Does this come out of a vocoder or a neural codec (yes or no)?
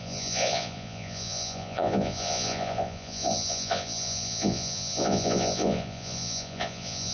yes